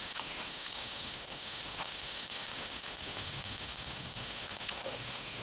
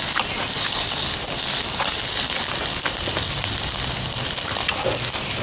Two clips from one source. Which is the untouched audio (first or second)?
second